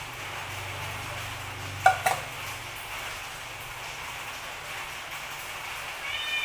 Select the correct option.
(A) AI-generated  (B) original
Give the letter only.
B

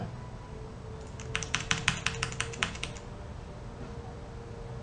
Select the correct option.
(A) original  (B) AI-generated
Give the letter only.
A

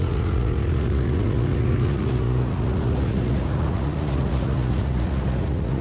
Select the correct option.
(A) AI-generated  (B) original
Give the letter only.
A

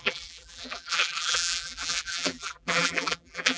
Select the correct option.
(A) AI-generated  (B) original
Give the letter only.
A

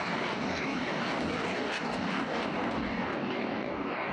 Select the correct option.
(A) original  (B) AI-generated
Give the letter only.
B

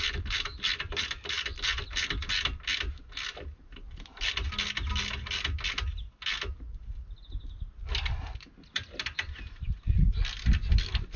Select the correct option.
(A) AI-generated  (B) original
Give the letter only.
B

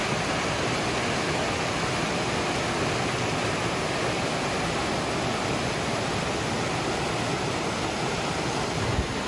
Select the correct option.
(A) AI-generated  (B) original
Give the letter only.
B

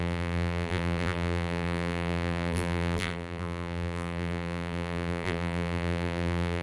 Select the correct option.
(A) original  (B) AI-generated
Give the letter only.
B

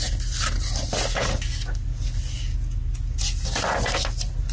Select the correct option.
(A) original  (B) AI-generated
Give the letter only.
A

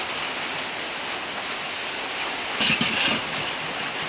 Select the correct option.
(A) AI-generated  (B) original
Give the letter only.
B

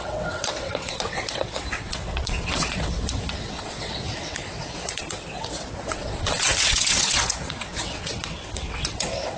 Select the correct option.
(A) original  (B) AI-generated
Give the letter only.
B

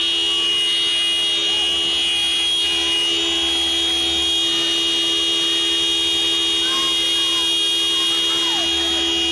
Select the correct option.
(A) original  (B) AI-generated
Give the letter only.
A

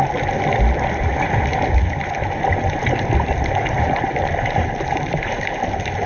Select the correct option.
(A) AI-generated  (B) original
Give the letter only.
B